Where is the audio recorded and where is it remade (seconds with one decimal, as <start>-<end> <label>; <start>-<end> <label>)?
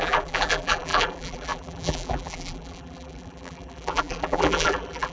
0.0-5.1 remade